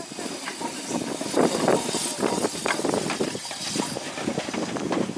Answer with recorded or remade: remade